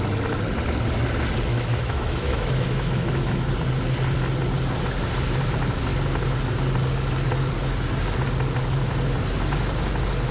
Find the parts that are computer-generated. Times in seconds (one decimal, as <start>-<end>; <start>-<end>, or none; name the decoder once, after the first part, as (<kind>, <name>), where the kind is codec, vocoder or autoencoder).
1.5-3.5 (autoencoder, DAC-VAE)

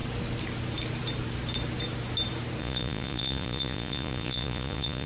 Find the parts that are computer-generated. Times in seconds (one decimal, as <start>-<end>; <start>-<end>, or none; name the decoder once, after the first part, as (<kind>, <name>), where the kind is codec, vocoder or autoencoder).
2.6-5.1 (vocoder, Vocos)

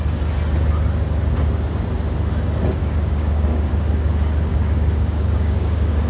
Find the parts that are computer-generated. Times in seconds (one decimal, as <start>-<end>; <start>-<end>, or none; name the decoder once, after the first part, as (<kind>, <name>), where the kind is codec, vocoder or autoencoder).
2.8-3.7 (codec, DAC); 4.5-6.1